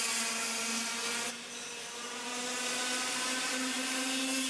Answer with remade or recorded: recorded